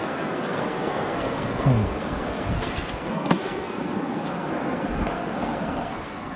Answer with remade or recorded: remade